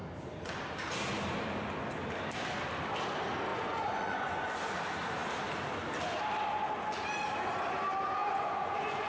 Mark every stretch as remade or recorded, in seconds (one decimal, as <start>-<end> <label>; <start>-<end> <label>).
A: 0.0-3.5 recorded; 3.5-4.5 remade; 4.5-8.2 recorded; 8.2-9.1 remade